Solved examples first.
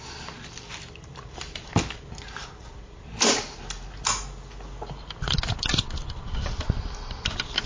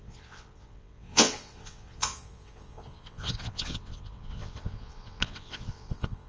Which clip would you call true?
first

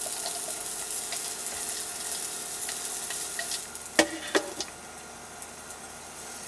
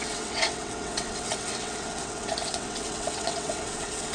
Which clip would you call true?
first